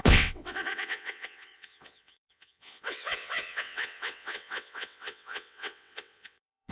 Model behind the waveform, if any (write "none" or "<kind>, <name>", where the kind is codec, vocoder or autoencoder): vocoder, WaveNeXt